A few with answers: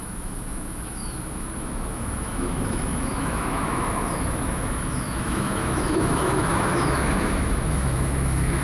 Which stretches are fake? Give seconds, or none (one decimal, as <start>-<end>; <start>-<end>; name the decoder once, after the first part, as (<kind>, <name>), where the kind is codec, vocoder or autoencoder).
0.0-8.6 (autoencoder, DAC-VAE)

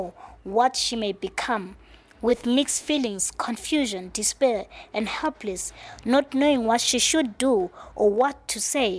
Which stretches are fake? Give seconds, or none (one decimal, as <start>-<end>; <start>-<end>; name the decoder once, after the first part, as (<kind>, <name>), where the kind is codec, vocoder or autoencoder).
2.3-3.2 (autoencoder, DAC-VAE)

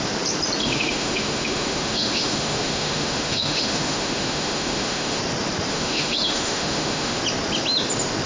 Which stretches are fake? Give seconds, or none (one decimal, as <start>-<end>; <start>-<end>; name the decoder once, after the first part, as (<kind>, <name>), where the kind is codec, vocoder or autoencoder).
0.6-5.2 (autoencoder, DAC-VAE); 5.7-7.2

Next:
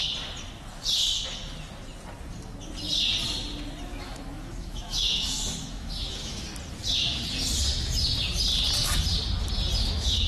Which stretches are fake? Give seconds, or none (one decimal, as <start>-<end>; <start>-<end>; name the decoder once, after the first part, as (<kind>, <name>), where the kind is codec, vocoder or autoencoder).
3.9-6.5 (autoencoder, DAC-VAE); 9.8-10.3

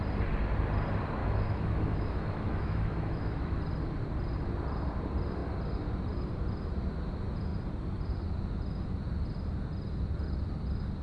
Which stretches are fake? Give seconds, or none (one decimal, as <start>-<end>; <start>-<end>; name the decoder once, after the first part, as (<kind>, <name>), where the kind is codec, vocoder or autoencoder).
1.2-3.6 (autoencoder, DAC-VAE)